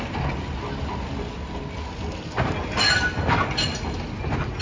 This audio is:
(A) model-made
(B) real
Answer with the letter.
B